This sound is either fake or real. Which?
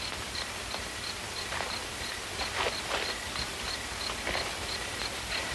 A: fake